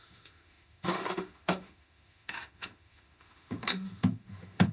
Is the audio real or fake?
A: fake